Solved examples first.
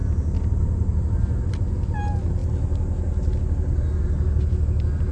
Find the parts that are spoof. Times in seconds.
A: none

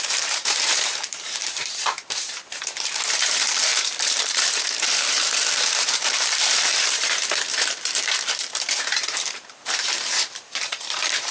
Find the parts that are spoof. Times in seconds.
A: 0.0-11.3 (vocoder, BigVGAN v2)

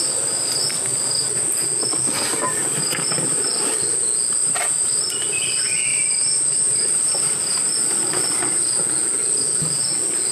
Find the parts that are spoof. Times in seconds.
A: 4.4-5.0 (vocoder, BigVGAN v2); 5.9-7.8